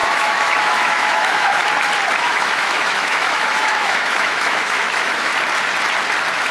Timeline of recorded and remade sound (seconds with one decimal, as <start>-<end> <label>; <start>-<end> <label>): 0.0-1.6 remade; 1.6-2.2 recorded; 2.2-5.3 remade; 5.3-6.5 recorded